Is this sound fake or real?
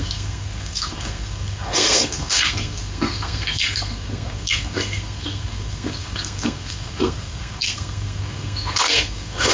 fake